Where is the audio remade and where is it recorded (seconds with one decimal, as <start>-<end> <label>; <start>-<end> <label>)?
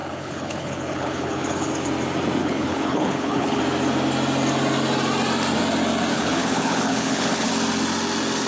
0.0-1.7 remade; 1.7-2.4 recorded; 2.4-3.6 remade; 3.6-6.1 recorded; 6.1-7.5 remade; 7.5-8.5 recorded